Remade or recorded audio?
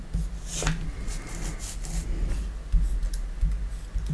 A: recorded